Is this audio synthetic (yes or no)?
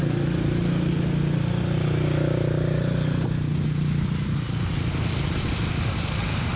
no